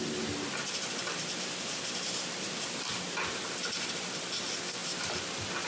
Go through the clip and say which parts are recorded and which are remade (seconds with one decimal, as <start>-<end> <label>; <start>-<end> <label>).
0.0-1.1 recorded; 1.1-2.9 remade; 2.9-4.8 recorded; 4.8-5.7 remade